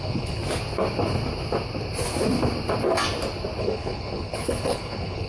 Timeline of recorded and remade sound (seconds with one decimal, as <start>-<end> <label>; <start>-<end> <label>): 0.0-0.4 remade; 0.4-3.6 recorded; 3.6-5.3 remade